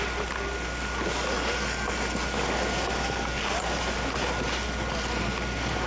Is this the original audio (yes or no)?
yes